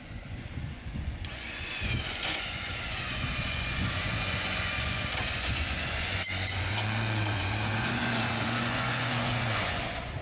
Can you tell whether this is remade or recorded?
remade